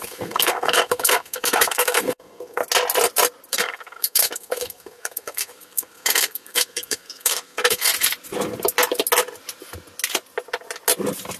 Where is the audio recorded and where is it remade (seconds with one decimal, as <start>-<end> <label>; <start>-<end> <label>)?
0.0-2.6 remade; 2.6-3.5 recorded; 3.5-7.9 remade; 7.9-11.4 recorded